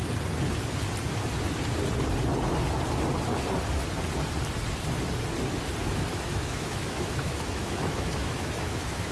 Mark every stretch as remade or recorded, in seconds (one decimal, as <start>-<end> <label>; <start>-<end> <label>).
0.0-5.8 recorded; 5.8-9.1 remade